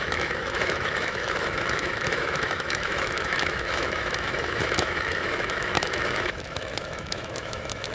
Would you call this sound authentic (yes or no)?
no